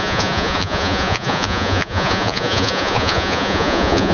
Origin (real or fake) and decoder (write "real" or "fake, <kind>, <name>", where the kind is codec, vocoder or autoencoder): fake, vocoder, Vocos